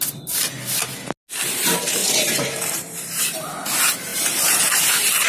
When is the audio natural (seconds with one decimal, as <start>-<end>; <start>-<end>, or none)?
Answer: 0.0-2.0; 3.2-4.1; 4.8-5.3